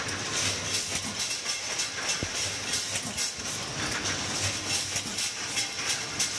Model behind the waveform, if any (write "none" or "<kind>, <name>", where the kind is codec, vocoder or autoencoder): none